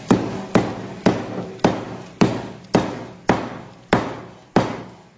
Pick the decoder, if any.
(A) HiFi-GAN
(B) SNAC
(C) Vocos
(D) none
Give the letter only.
D